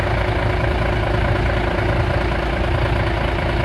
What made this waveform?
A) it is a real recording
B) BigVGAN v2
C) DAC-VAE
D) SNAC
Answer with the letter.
A